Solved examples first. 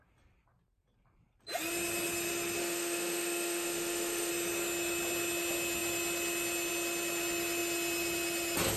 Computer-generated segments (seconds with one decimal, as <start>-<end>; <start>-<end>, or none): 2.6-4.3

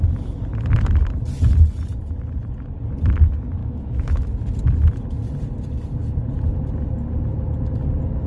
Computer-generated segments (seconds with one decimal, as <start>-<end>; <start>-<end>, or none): 3.6-4.2

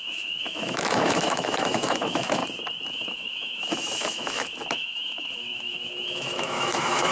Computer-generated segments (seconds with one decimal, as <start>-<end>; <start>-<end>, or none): 0.0-2.4; 2.9-7.1

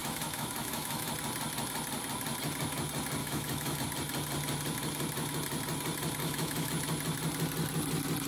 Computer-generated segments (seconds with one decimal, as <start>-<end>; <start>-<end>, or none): 0.0-1.1; 3.2-3.8; 6.2-6.7

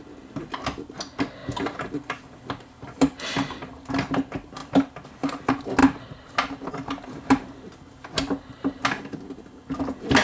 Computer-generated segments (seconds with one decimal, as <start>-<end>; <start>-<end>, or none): none

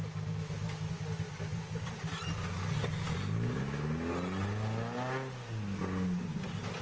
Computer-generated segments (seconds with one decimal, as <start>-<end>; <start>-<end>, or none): 0.4-0.9